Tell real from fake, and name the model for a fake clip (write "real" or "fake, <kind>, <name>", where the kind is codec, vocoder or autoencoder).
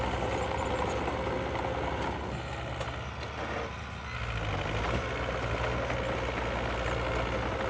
real